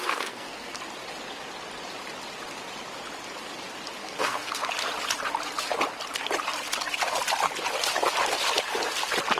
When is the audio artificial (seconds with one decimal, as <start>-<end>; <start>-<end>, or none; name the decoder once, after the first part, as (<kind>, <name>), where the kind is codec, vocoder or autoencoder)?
0.0-0.8 (codec, SNAC); 4.0-4.7